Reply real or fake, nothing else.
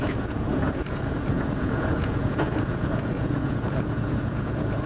fake